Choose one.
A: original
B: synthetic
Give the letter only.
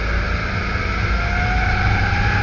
A